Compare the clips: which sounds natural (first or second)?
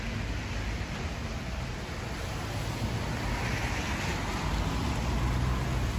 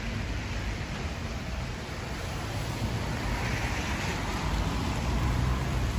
first